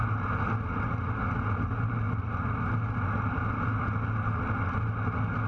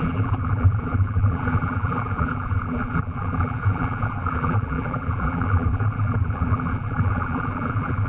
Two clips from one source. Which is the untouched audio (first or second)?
first